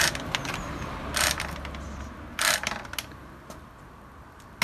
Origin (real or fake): real